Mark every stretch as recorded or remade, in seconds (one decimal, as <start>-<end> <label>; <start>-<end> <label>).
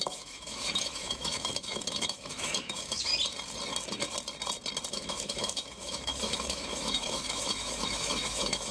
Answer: 0.0-3.1 remade; 3.1-4.9 recorded; 4.9-8.7 remade